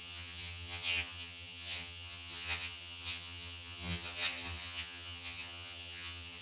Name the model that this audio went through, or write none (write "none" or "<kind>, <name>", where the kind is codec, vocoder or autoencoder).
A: vocoder, HiFi-GAN